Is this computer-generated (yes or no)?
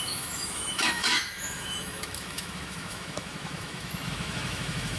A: yes